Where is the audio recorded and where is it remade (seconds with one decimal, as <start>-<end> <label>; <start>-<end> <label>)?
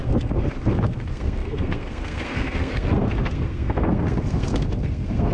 0.0-5.3 remade